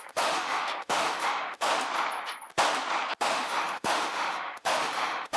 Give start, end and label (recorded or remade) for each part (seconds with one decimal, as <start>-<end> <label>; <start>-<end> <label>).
0.0-1.7 remade; 1.7-3.2 recorded; 3.2-5.4 remade